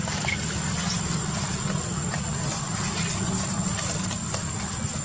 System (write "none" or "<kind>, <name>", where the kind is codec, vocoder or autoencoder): none